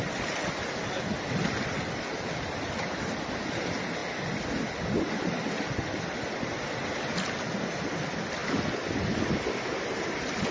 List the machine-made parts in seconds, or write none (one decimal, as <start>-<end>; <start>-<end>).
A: none

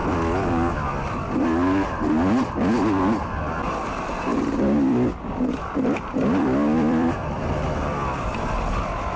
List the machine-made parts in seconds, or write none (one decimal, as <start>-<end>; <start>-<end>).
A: 4.3-9.2

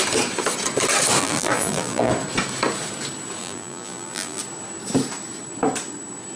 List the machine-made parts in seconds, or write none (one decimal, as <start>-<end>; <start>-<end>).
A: 1.2-2.1; 3.4-4.4

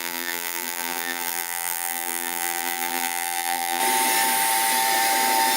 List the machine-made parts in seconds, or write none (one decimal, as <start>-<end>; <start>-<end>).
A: 0.0-3.8

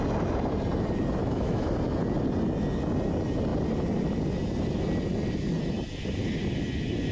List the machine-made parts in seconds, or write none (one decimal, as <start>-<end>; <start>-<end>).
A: 1.2-1.7

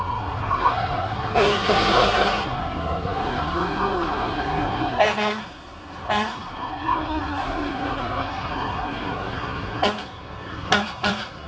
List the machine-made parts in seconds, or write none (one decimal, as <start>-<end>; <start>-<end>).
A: 0.0-11.5

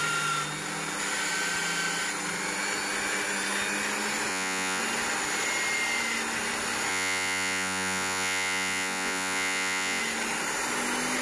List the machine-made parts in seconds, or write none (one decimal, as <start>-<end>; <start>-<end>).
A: 4.3-4.8; 6.9-10.0